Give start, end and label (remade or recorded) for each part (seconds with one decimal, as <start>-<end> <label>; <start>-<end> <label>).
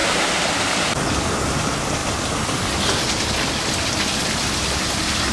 0.0-1.3 remade; 1.3-2.0 recorded; 2.0-2.6 remade; 2.6-5.3 recorded